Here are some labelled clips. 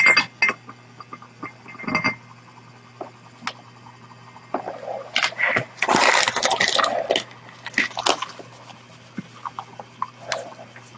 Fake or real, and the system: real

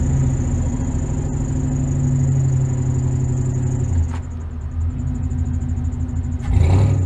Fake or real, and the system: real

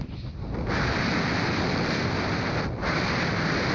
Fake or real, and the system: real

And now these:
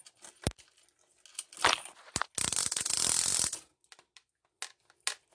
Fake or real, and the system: real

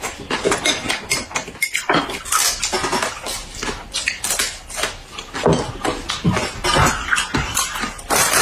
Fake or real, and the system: real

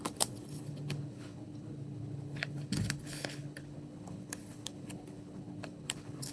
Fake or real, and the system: fake, codec, HILCodec